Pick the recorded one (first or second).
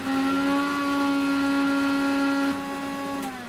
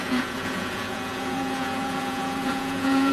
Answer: first